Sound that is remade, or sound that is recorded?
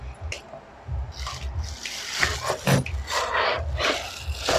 recorded